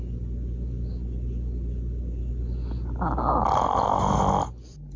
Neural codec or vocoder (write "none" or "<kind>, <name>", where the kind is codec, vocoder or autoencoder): none